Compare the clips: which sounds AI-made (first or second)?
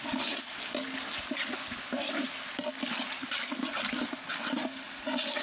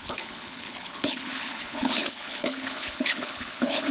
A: second